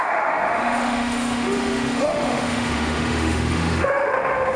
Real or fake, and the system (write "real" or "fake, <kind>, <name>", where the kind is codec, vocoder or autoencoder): fake, autoencoder, DAC-VAE